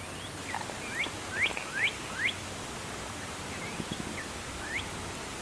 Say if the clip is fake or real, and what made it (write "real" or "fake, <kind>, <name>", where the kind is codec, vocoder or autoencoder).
real